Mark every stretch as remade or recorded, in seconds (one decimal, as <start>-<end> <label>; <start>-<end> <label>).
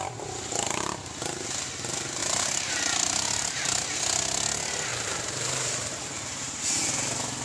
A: 0.0-2.2 recorded; 2.2-3.8 remade; 3.8-4.9 recorded; 4.9-6.6 remade; 6.6-7.4 recorded